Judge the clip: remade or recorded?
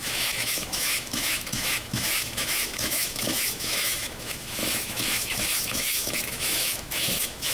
remade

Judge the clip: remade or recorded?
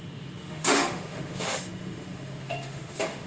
remade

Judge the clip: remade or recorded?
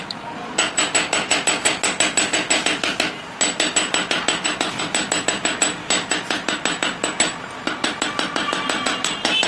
recorded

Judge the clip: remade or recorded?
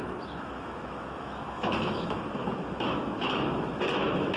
remade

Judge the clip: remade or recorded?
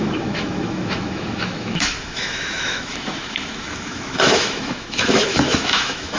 remade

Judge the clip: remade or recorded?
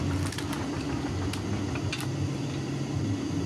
recorded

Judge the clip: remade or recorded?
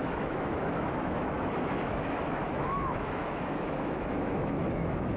remade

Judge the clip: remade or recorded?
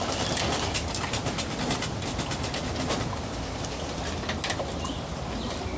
recorded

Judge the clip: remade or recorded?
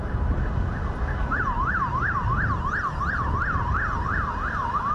recorded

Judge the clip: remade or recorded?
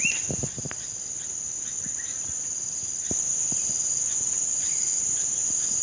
recorded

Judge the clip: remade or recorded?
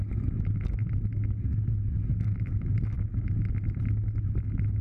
recorded